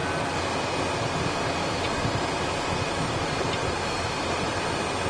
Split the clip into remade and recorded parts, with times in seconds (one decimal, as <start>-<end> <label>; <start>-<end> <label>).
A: 0.0-5.1 recorded